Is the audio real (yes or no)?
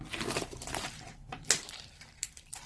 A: no